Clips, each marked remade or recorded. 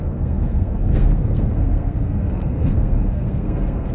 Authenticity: remade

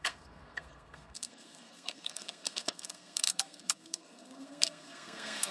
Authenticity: remade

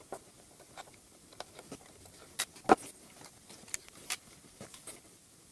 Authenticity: recorded